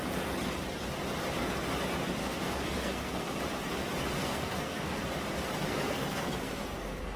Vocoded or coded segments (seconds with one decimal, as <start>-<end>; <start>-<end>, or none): 2.2-3.4; 4.2-5.0; 5.6-7.2